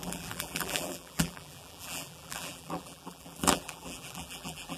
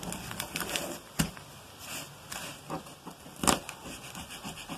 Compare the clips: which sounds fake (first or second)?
first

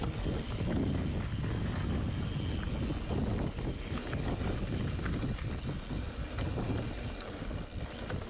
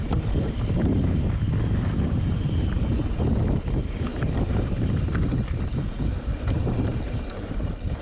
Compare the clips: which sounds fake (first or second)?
second